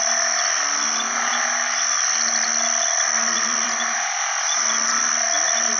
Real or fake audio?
real